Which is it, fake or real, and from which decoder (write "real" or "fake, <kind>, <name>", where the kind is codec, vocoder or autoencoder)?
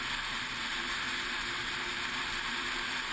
real